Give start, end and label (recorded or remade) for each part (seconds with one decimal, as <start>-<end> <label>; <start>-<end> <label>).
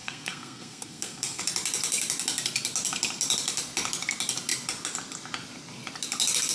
0.0-1.4 remade; 1.4-6.5 recorded